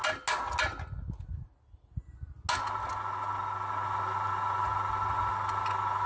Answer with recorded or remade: recorded